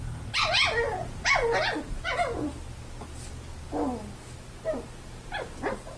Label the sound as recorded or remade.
recorded